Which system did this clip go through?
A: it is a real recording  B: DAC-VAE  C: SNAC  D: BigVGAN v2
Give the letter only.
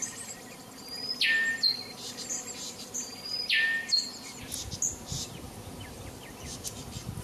A